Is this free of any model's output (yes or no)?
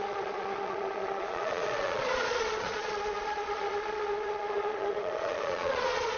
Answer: no